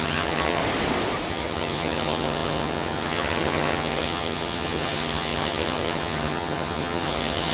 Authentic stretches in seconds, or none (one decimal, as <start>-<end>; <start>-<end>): 0.6-1.3